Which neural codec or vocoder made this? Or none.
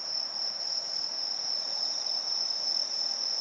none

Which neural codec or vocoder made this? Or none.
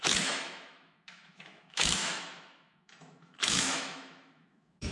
autoencoder, DAC-VAE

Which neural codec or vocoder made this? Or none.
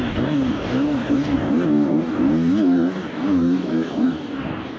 codec, DAC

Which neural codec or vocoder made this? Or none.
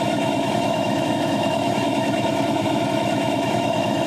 autoencoder, DAC-VAE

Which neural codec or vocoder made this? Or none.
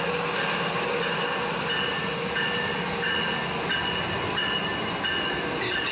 none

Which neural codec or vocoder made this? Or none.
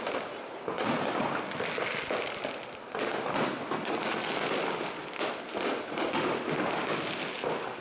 none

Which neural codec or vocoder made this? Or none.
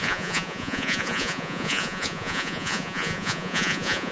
vocoder, Vocos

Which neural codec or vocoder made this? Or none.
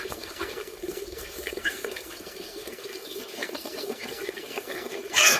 codec, SNAC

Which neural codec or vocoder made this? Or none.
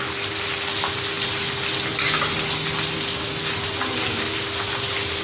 none